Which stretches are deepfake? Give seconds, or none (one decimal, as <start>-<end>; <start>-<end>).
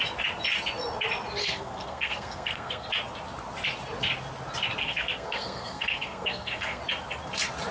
1.4-2.9; 4.8-6.8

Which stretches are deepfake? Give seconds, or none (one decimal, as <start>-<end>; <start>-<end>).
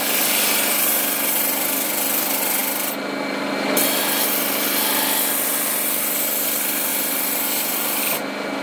6.9-8.0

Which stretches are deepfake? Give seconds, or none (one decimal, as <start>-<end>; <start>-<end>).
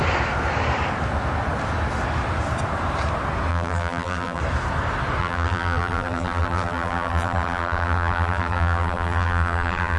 3.5-4.4; 5.2-10.0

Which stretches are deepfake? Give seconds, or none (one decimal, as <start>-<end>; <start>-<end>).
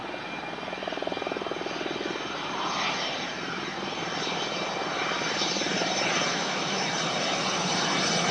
6.3-6.9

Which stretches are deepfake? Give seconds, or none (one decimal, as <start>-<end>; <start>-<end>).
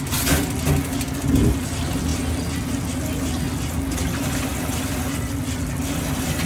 none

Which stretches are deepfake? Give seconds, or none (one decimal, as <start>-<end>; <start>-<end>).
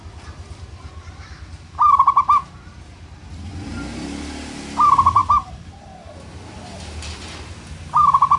5.2-6.3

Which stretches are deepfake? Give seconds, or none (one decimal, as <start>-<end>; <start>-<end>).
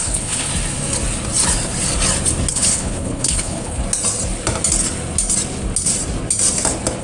0.0-0.5; 2.5-3.8